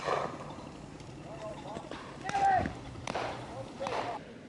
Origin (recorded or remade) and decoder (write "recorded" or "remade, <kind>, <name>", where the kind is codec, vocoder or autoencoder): remade, vocoder, BigVGAN v2